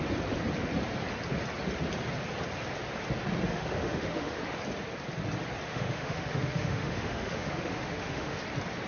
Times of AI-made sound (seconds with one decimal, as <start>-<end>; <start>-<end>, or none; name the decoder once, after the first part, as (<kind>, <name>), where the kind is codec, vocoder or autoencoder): 3.5-4.4 (autoencoder, DAC-VAE); 5.7-8.4